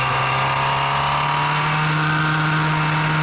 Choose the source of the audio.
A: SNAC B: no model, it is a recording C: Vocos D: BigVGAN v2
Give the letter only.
B